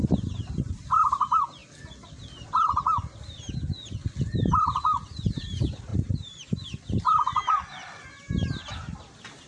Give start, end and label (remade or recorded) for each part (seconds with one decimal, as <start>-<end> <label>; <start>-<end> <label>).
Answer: 0.0-1.6 remade; 1.6-5.4 recorded; 5.4-5.9 remade; 5.9-8.7 recorded; 8.7-9.5 remade